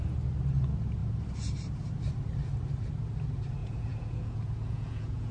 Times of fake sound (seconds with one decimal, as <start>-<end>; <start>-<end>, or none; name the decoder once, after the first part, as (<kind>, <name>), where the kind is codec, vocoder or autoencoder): 3.6-5.3 (vocoder, Vocos)